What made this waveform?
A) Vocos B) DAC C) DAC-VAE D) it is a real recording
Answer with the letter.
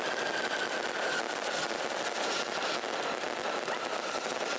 D